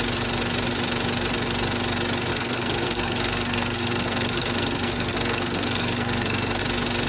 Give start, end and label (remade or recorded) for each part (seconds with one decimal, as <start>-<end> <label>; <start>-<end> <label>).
0.0-2.3 recorded; 2.3-6.6 remade; 6.6-7.1 recorded